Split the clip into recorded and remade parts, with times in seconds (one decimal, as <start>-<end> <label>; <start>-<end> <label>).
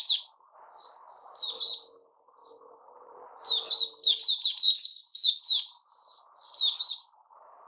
0.0-7.7 recorded